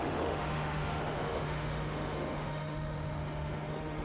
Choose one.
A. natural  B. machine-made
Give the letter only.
B